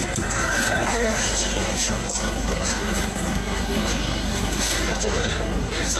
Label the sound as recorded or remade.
remade